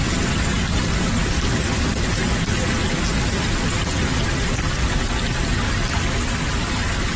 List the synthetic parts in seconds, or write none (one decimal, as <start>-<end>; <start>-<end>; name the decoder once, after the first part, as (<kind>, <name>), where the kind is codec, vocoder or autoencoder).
none

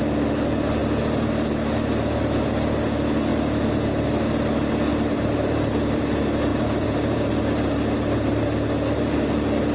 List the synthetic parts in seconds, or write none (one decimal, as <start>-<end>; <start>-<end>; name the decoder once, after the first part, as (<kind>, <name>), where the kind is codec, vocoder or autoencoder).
4.9-6.0 (vocoder, BigVGAN v2); 6.5-7.3

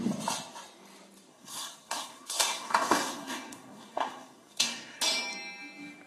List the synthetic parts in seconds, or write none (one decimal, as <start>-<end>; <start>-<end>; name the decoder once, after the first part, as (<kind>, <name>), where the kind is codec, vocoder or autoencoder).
1.3-5.0 (codec, SNAC)

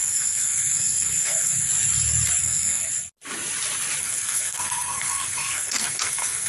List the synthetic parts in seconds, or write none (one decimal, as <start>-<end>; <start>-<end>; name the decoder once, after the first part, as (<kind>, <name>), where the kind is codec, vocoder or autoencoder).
0.0-1.7 (codec, SNAC); 2.4-2.9; 4.0-6.5

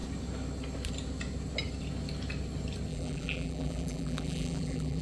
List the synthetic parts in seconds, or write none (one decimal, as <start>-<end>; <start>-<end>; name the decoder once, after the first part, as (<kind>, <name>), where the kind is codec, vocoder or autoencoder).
2.9-5.0 (vocoder, BigVGAN v2)

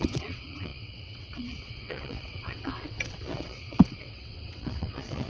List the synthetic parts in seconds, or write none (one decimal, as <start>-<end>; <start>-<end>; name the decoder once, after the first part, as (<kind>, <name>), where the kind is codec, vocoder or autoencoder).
0.0-5.3 (vocoder, WaveNeXt)

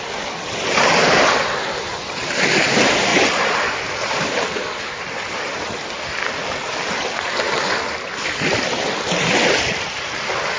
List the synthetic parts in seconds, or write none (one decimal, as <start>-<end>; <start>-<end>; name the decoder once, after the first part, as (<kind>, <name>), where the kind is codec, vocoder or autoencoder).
none